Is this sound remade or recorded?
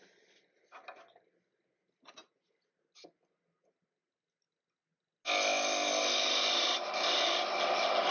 recorded